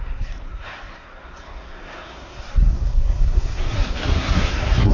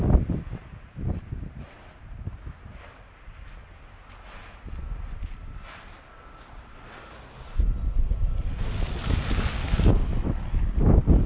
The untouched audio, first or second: second